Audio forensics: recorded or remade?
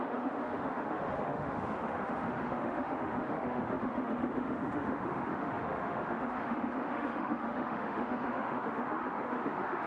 remade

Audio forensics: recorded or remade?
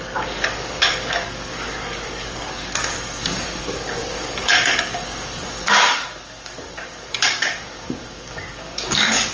remade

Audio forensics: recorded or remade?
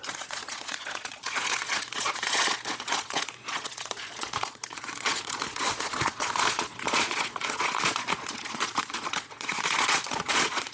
remade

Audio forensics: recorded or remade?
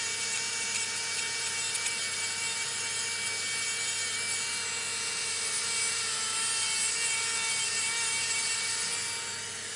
recorded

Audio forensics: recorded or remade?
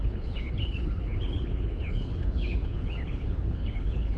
remade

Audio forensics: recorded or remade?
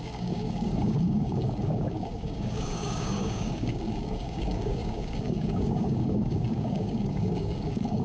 remade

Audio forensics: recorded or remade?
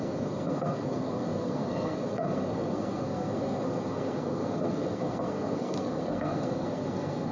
remade